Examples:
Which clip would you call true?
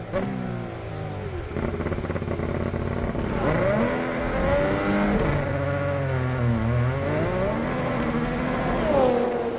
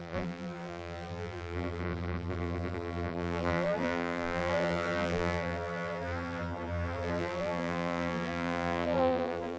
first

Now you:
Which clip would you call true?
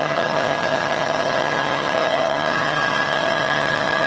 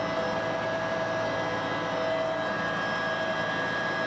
second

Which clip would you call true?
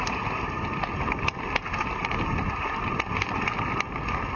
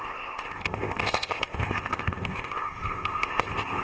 first